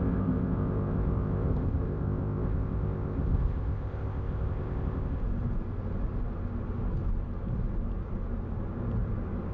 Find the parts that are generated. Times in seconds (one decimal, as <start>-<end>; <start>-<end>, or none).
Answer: 0.0-5.2